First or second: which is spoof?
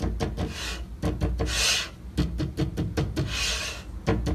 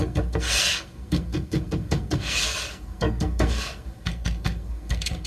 second